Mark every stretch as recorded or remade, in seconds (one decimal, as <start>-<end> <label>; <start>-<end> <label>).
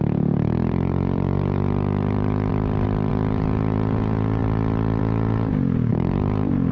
0.0-2.5 remade; 2.5-3.1 recorded; 3.1-4.4 remade; 4.4-5.0 recorded; 5.0-6.7 remade